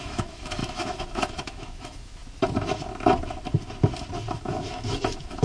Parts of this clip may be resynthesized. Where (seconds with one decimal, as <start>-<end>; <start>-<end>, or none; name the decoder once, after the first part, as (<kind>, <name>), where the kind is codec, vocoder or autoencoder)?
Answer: 0.0-2.2 (autoencoder, DAC-VAE); 4.4-5.4